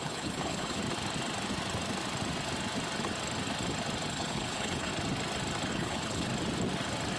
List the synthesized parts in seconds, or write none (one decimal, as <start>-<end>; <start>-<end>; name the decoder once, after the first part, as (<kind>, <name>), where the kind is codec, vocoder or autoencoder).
0.0-0.8 (codec, HILCodec); 4.1-4.9; 5.7-6.3